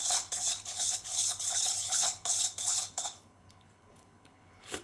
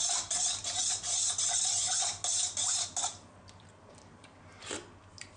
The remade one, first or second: first